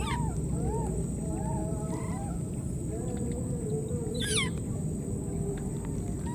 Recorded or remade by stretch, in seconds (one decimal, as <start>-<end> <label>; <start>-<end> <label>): 0.0-1.7 recorded; 1.7-2.3 remade; 2.3-6.3 recorded